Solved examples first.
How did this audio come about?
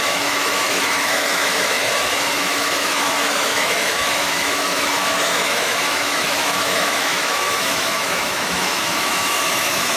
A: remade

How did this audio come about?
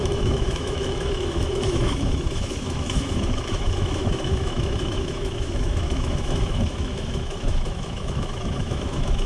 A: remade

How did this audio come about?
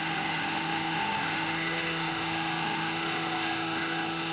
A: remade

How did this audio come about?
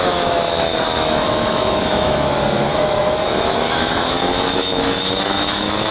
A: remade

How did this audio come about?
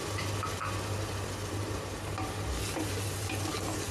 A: recorded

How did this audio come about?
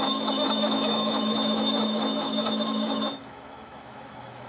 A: remade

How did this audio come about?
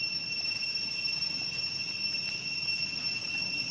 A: recorded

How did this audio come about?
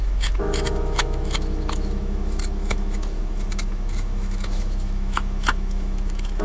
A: remade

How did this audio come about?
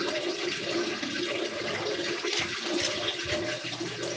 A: recorded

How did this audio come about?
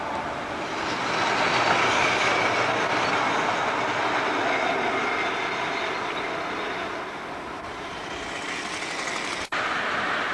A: recorded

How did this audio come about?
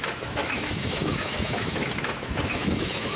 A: remade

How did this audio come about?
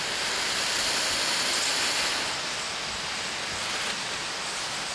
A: recorded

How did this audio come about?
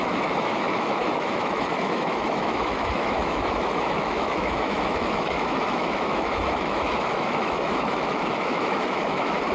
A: remade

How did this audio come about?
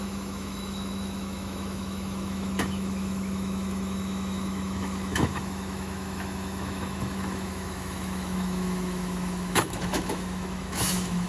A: remade